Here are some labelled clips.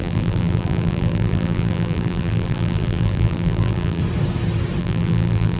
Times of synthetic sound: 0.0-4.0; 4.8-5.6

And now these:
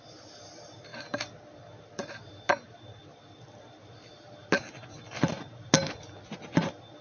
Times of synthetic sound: none

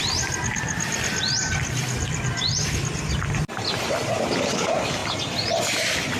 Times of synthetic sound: 0.0-6.2

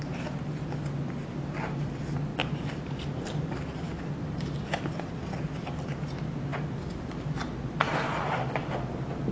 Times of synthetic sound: 2.3-4.0

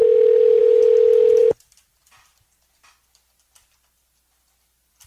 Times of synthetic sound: 0.0-0.6; 1.4-2.2

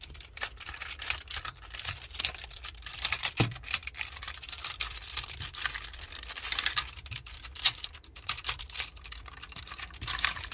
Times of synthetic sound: 0.0-10.5

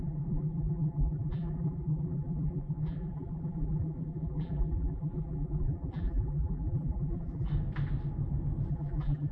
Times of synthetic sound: 0.0-7.5; 8.7-9.3